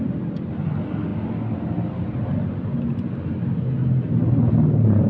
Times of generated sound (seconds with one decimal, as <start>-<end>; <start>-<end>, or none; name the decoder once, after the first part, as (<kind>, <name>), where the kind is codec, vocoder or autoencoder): none